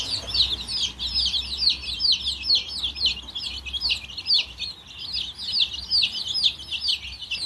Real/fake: real